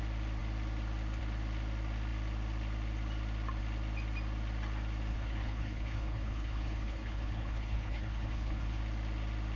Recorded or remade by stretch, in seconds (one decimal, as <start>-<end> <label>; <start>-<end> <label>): 0.0-5.1 recorded; 5.1-8.8 remade; 8.8-9.6 recorded